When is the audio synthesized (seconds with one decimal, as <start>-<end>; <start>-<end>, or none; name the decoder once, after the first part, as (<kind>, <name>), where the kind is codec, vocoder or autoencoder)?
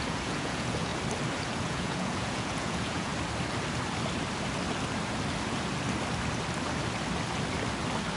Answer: 0.0-0.9 (vocoder, Vocos); 1.6-3.1